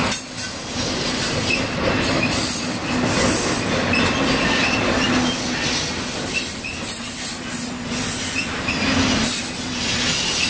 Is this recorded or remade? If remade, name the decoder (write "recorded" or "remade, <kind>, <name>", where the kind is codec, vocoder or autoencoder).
recorded